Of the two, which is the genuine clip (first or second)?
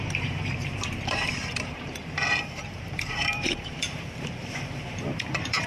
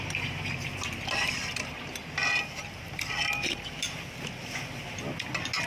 second